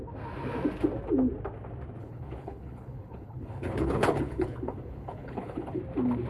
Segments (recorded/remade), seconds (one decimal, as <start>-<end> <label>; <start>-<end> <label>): 0.0-2.0 recorded; 2.0-5.8 remade; 5.8-6.3 recorded